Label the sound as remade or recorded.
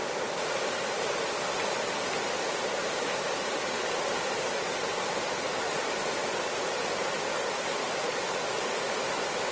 recorded